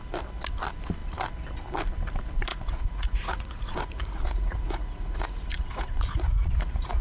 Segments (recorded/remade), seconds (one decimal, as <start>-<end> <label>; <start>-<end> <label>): 0.0-2.5 recorded; 2.5-7.0 remade